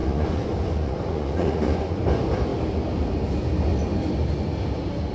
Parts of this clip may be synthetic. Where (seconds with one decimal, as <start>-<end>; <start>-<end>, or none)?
0.0-2.0